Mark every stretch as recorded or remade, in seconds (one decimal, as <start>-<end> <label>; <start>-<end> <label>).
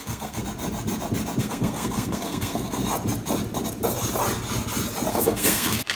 0.0-0.4 remade; 0.4-1.4 recorded; 1.4-2.8 remade; 2.8-5.1 recorded; 5.1-5.9 remade